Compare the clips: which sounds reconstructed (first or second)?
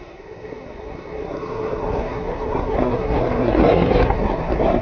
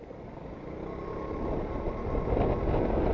first